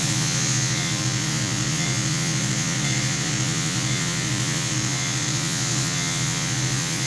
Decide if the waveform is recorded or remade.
remade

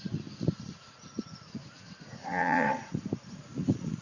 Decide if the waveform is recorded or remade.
remade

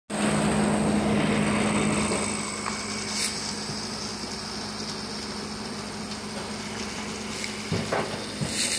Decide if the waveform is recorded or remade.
recorded